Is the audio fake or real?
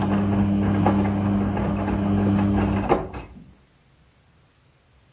real